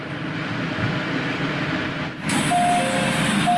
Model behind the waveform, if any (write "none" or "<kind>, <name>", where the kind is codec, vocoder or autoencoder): none